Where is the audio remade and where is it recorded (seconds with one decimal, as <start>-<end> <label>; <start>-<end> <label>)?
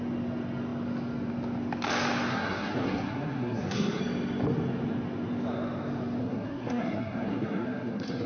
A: 0.0-2.3 recorded; 2.3-4.0 remade; 4.0-6.2 recorded; 6.2-8.3 remade